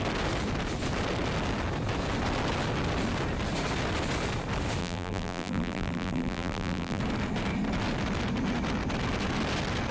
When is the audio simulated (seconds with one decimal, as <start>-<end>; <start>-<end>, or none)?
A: 4.8-7.0